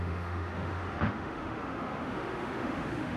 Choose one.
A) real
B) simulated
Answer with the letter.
B